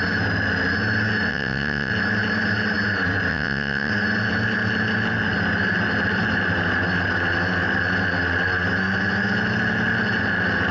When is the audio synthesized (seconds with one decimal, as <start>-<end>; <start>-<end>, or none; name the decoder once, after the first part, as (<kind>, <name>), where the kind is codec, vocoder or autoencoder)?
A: 1.3-1.9 (vocoder, WaveNeXt); 3.3-3.9